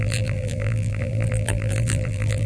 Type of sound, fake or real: fake